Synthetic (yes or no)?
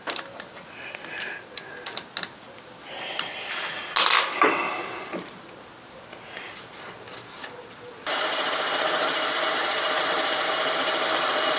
no